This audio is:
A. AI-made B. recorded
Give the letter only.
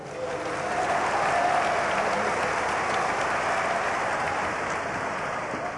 B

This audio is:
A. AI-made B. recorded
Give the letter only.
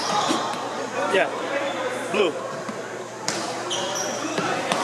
A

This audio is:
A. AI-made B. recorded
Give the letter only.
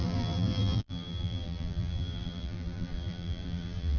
A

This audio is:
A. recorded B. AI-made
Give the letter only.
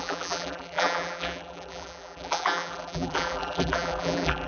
B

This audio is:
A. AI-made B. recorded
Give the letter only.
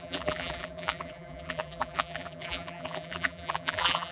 A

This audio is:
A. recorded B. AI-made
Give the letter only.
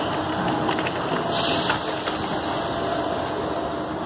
A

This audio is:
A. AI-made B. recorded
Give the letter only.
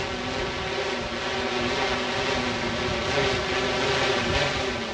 B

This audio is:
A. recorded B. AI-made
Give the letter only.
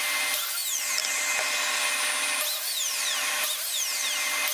A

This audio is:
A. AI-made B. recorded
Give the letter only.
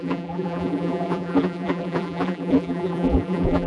A